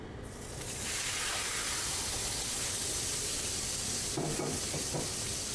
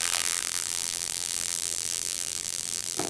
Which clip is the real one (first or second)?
first